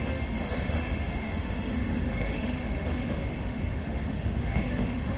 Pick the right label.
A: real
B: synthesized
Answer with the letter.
B